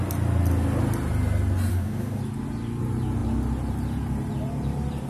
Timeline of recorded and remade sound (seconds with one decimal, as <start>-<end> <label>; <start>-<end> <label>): 0.0-1.7 recorded; 1.7-2.2 remade; 2.2-5.1 recorded